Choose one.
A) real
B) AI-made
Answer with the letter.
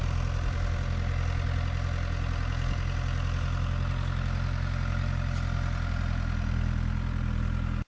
A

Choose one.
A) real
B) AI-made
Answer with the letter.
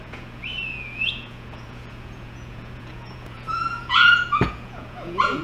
B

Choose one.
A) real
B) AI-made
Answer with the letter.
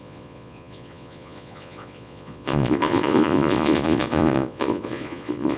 B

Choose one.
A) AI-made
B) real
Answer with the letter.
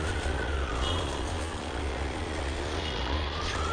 A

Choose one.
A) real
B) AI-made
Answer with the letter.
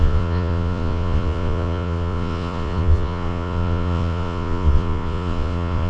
B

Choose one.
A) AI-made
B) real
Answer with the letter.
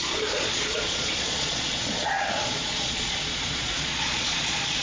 A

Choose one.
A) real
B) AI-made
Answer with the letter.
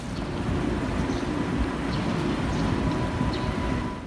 A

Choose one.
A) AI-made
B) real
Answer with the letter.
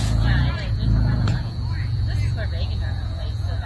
A